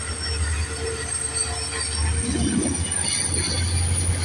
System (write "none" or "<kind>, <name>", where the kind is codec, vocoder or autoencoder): none